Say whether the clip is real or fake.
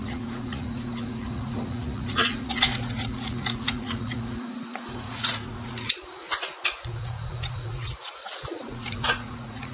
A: fake